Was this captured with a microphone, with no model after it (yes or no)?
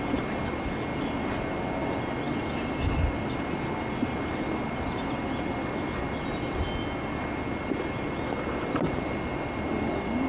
yes